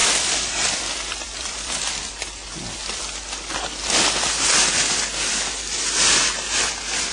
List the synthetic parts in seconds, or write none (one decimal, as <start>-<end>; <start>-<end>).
0.0-3.5